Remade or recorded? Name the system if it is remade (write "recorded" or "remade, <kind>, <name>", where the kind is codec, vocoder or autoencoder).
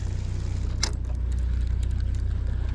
recorded